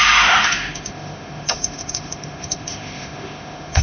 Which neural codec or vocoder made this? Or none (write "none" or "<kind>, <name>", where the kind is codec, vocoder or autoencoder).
autoencoder, DAC-VAE